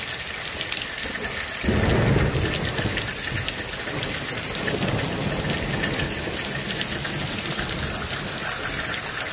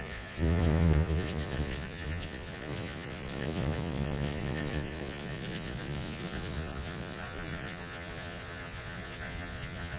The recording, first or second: first